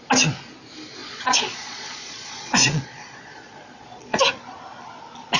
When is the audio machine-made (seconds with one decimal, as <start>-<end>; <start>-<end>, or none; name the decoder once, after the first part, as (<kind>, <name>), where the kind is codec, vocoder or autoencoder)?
1.0-4.2 (vocoder, Vocos)